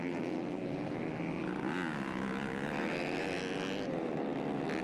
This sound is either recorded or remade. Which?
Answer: recorded